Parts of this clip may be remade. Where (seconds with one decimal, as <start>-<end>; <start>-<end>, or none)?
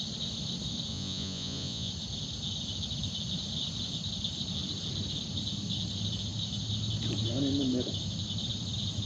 0.9-1.9